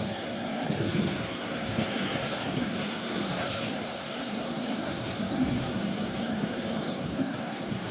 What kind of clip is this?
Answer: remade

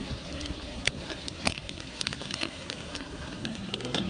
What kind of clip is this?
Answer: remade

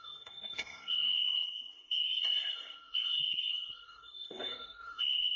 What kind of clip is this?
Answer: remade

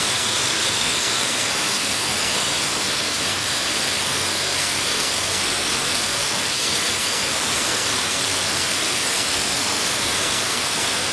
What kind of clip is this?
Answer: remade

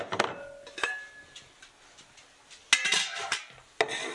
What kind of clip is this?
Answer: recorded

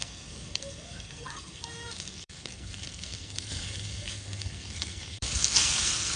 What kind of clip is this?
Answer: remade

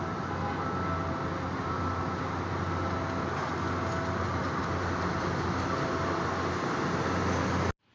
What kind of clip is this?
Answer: recorded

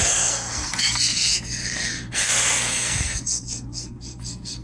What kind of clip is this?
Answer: remade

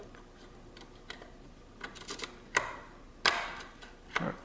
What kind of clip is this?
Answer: recorded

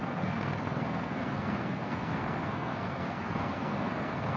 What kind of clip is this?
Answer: remade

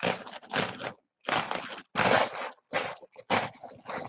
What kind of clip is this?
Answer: recorded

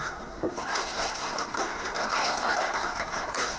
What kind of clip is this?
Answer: remade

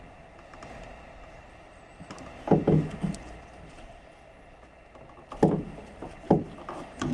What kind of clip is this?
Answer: recorded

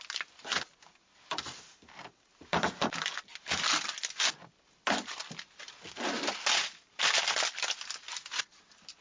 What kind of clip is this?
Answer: recorded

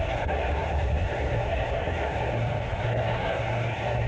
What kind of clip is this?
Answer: remade